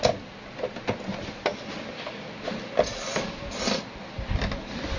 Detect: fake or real real